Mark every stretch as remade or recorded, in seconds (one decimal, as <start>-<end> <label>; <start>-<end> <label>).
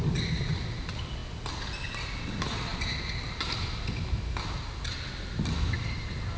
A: 0.0-6.4 recorded